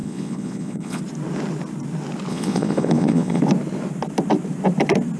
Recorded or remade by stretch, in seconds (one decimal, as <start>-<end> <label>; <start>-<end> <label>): 0.0-1.0 remade; 1.0-2.3 recorded; 2.3-3.4 remade; 3.4-5.2 recorded